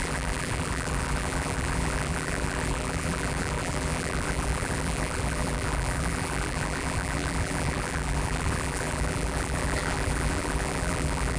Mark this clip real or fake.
fake